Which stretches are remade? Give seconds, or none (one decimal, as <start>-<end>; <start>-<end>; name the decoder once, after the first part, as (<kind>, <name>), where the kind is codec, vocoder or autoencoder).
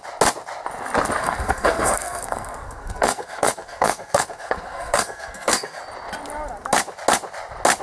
1.2-5.8 (codec, SNAC)